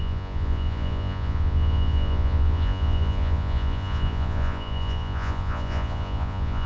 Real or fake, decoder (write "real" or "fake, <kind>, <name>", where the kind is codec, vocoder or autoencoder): fake, vocoder, Vocos